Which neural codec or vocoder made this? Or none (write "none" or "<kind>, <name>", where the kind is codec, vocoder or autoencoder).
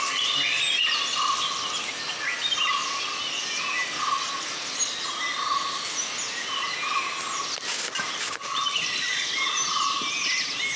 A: none